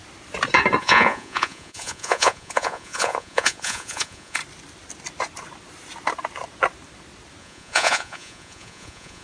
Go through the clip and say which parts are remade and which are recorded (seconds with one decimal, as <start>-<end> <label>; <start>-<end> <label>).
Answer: 0.0-0.8 recorded; 0.8-4.4 remade; 4.4-7.4 recorded; 7.4-9.2 remade